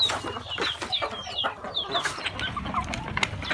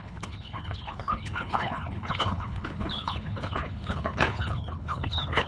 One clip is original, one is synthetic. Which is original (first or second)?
first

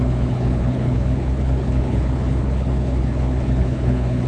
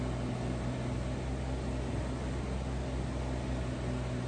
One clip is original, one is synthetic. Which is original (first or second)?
second